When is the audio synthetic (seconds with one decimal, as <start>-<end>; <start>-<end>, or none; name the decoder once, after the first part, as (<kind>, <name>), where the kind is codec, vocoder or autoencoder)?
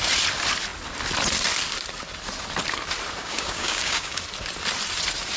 3.2-4.2 (codec, DAC)